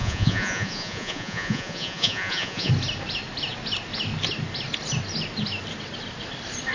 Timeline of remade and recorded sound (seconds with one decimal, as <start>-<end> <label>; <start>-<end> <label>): 0.0-2.7 remade; 2.7-6.7 recorded